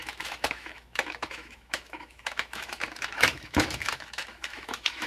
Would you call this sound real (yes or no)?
no